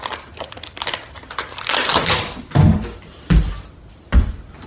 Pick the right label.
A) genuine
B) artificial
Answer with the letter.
A